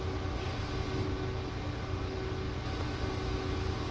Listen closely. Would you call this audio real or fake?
real